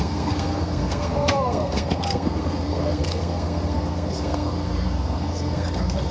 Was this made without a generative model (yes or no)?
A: no